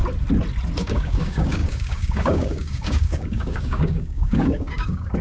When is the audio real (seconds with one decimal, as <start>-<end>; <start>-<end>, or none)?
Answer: 0.0-0.8